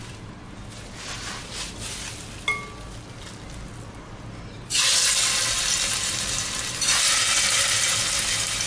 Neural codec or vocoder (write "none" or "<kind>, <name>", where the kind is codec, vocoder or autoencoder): none